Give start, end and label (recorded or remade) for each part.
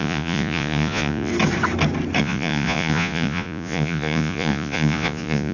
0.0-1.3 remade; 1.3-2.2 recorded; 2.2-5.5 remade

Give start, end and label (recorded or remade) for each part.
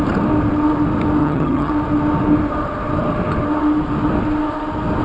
0.0-1.2 recorded; 1.2-1.7 remade; 1.7-5.0 recorded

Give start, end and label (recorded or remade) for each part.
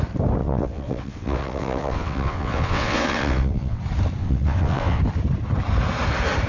0.0-0.4 recorded; 0.4-3.8 remade; 3.8-4.2 recorded; 4.2-5.0 remade; 5.0-6.5 recorded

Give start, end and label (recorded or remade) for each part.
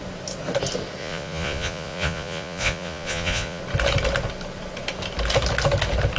0.0-1.0 recorded; 1.0-3.6 remade; 3.6-6.2 recorded